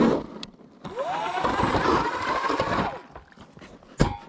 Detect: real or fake real